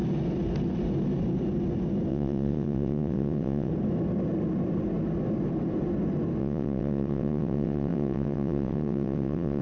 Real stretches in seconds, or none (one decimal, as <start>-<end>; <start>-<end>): 0.0-2.1; 3.7-6.4